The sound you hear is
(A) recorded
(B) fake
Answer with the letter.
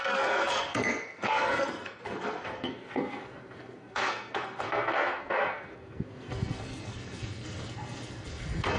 B